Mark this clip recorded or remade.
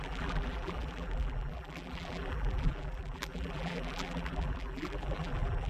remade